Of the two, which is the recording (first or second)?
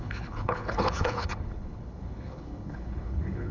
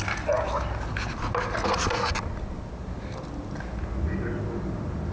second